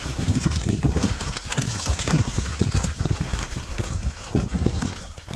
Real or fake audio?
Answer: fake